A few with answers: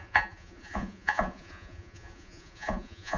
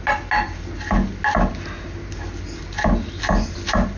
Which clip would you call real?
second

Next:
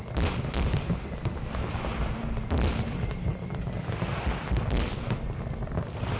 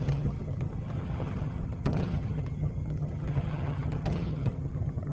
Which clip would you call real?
first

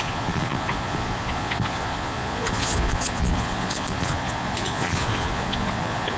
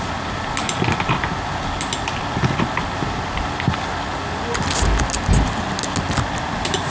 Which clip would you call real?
second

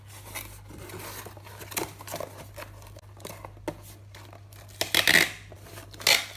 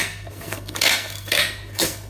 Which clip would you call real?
first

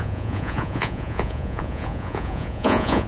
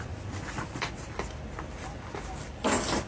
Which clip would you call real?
second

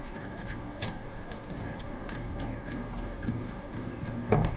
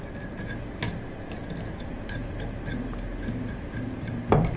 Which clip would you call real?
second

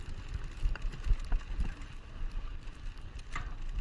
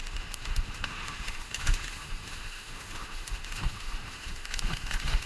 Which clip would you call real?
first